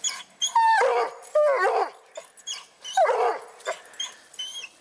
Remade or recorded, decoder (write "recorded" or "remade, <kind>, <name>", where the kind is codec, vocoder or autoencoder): recorded